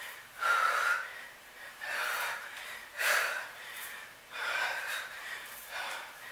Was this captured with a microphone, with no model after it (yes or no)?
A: no